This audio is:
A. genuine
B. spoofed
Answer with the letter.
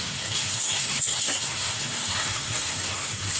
B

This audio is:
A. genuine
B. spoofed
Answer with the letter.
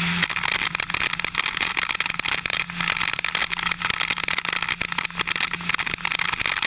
A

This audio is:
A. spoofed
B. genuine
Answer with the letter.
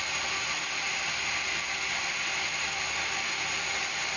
B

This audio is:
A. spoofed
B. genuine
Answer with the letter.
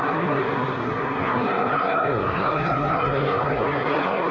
A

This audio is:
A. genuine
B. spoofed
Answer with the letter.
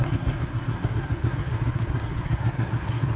B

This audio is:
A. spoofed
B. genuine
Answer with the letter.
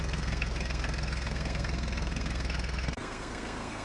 A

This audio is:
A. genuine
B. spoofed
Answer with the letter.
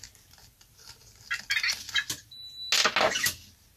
A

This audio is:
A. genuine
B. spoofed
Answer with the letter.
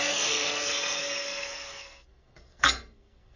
B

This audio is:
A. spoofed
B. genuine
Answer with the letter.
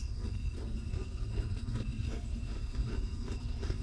A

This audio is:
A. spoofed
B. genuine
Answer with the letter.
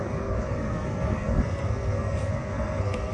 A